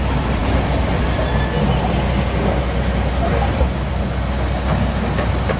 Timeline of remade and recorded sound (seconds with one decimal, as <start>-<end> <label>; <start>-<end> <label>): 0.0-5.6 recorded

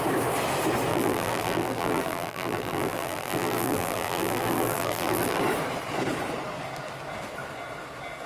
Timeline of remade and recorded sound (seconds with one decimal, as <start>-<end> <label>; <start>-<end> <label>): 0.0-0.9 recorded; 0.9-5.4 remade; 5.4-8.3 recorded